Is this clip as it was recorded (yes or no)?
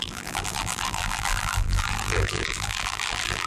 no